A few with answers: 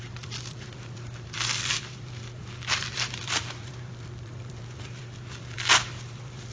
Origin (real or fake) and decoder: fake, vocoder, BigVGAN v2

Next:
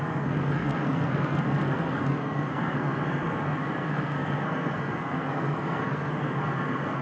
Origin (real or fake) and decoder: fake, codec, SNAC